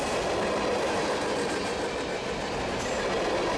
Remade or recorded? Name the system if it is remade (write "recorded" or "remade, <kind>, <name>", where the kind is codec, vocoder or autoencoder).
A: recorded